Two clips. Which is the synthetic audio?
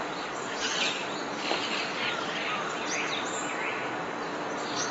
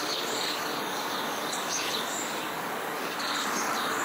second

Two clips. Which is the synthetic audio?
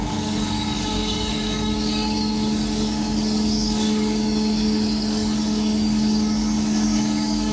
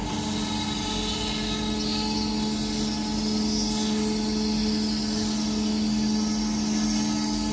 first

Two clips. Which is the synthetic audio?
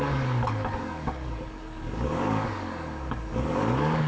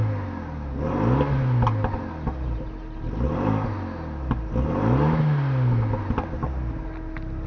first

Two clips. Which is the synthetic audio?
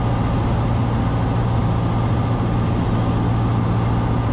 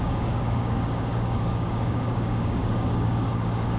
second